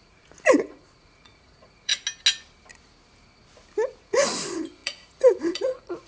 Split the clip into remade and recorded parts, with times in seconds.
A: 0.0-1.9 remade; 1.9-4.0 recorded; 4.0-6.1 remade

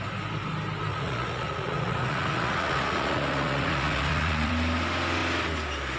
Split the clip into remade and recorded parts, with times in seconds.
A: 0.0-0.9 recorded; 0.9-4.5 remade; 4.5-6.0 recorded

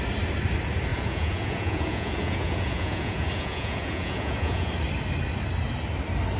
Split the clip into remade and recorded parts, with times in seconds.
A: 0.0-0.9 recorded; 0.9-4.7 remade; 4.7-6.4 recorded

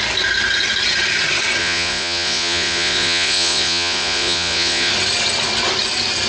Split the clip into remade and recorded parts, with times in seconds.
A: 0.0-1.6 recorded; 1.6-4.9 remade; 4.9-6.3 recorded